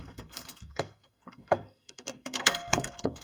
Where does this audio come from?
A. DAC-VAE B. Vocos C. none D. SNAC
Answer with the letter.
D